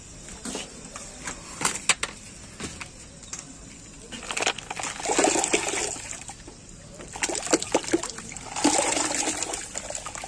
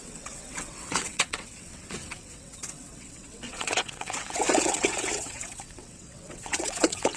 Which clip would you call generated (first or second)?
second